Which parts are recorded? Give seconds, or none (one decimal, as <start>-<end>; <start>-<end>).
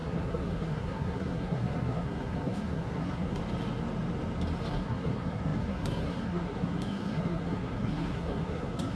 3.4-4.7